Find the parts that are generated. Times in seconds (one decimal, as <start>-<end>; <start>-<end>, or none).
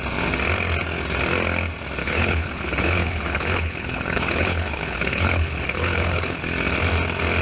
2.0-6.4